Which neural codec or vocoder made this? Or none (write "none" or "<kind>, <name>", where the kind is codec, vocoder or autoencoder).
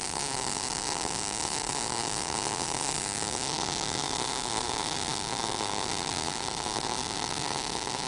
autoencoder, DAC-VAE